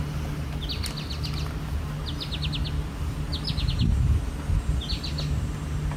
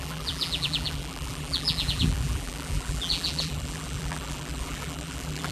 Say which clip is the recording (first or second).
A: first